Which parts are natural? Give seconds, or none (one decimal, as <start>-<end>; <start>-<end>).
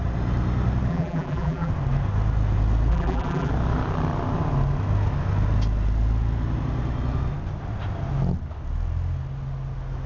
0.0-0.9; 1.7-2.9; 3.5-10.1